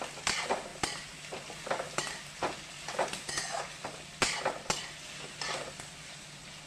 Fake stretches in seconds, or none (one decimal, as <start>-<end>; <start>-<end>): none